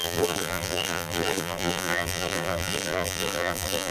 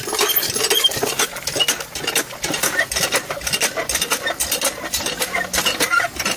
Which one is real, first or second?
second